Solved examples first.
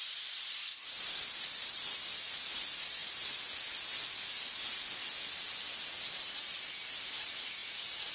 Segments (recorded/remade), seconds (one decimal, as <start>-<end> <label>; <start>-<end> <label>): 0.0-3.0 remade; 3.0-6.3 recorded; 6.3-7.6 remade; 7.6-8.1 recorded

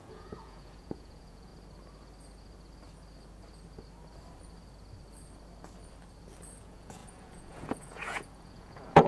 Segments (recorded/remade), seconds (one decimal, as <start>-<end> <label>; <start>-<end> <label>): 0.0-1.5 remade; 1.5-6.6 recorded; 6.6-9.1 remade

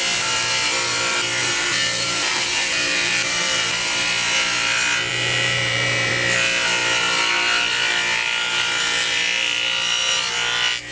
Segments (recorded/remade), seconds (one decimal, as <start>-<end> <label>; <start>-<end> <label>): 0.0-1.4 recorded; 1.4-3.7 remade; 3.7-5.1 recorded; 5.1-6.1 remade; 6.1-10.9 recorded

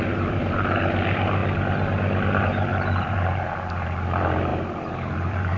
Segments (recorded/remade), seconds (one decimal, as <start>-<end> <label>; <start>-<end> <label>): 0.0-1.4 remade; 1.4-2.4 recorded; 2.4-5.6 remade

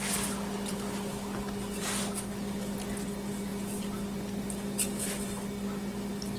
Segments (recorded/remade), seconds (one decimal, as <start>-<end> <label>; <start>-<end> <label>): 0.0-6.4 recorded

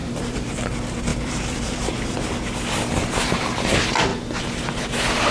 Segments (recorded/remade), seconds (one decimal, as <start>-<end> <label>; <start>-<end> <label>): 0.0-0.5 remade; 0.5-1.1 recorded; 1.1-2.8 remade; 2.8-5.3 recorded

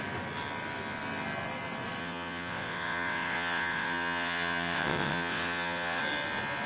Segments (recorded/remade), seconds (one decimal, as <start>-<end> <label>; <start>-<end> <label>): 0.0-2.0 recorded; 2.0-6.0 remade; 6.0-6.7 recorded